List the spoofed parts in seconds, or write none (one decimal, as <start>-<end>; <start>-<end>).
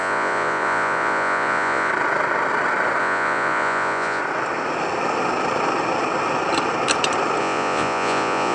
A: 0.0-1.9; 3.0-4.2; 7.4-8.5